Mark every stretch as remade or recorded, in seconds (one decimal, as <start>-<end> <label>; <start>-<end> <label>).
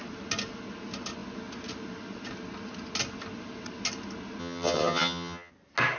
0.0-4.4 recorded; 4.4-5.5 remade; 5.5-6.0 recorded